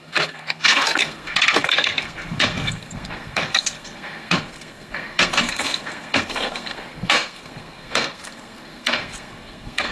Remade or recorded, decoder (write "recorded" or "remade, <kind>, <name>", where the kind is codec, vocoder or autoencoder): remade, codec, SNAC